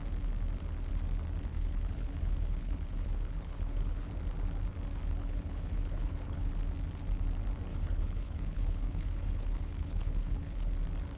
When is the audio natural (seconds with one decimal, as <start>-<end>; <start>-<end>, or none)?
0.0-1.5; 4.1-5.2; 6.5-7.7; 10.7-11.2